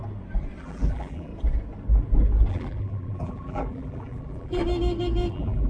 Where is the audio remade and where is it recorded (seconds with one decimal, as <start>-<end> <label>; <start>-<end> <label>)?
0.0-0.6 recorded; 0.6-1.3 remade; 1.3-2.5 recorded; 2.5-4.6 remade; 4.6-5.3 recorded; 5.3-5.7 remade